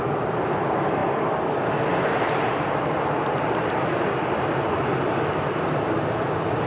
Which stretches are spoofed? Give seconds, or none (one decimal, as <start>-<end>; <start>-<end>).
none